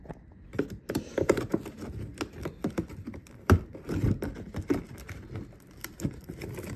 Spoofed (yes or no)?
no